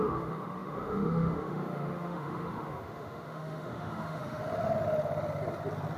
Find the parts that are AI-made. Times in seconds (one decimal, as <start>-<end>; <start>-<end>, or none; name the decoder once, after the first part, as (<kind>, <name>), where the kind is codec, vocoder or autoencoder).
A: 0.0-4.4 (autoencoder, DAC-VAE)